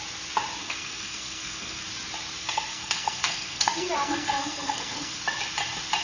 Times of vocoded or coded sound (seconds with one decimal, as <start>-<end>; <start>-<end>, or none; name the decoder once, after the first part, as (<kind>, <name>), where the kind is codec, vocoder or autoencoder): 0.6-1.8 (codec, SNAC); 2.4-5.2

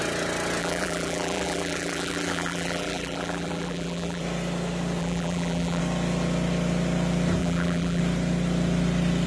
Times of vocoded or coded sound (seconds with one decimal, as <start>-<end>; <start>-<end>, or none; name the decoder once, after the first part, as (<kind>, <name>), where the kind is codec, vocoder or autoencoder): 0.6-4.2 (vocoder, BigVGAN v2); 5.0-5.8; 7.4-8.0

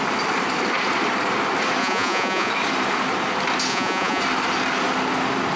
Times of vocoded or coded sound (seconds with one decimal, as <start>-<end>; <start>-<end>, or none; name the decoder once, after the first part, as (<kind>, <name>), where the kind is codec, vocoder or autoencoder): 1.8-2.5 (vocoder, Vocos); 3.7-4.2

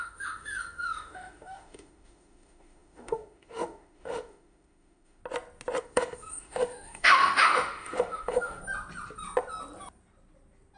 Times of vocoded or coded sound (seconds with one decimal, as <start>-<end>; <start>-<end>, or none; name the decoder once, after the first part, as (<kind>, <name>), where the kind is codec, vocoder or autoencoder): 0.0-5.2 (autoencoder, DAC-VAE); 5.8-8.6

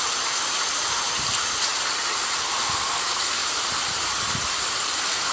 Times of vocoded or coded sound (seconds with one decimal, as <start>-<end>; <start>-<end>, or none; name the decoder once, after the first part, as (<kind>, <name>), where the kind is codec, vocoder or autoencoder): 3.4-4.2 (vocoder, BigVGAN v2)

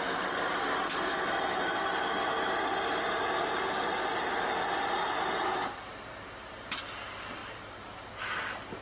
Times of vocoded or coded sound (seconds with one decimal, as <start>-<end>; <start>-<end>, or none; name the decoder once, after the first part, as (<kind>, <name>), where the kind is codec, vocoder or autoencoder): none

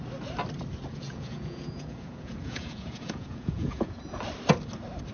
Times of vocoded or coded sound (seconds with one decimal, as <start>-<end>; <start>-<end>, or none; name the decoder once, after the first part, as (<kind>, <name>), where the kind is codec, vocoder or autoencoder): 0.9-4.0 (vocoder, Vocos)

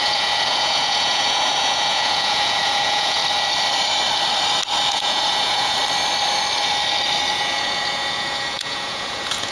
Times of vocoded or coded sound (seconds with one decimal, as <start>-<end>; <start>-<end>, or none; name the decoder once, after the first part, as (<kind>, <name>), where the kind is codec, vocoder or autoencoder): 0.0-3.2 (vocoder, Vocos); 4.9-5.8; 7.3-9.5